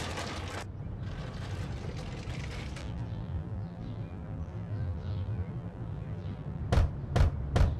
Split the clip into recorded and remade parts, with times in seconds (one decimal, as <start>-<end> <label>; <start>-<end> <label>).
0.0-2.8 recorded; 2.8-6.6 remade; 6.6-7.8 recorded